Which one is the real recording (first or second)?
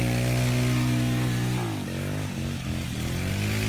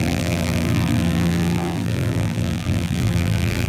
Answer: first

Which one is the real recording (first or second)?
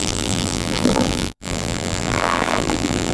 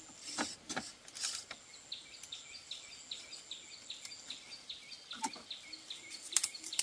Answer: second